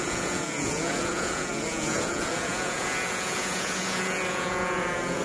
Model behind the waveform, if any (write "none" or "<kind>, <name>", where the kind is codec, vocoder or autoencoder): vocoder, Vocos